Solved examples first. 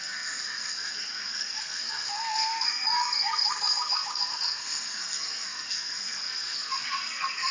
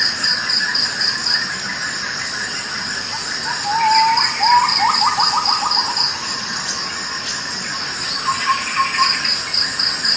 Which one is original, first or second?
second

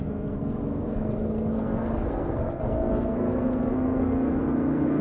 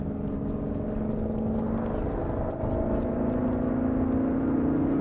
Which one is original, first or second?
second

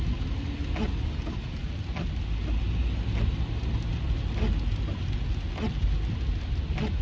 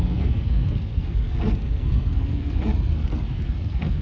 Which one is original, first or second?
first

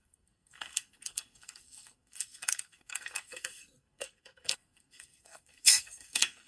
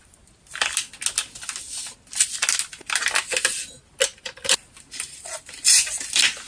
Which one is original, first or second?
second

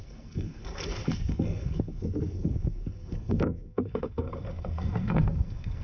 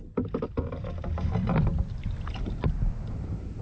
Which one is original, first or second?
second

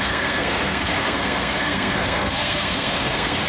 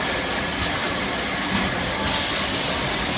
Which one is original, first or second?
second